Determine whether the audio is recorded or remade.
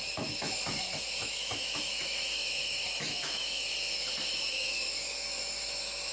remade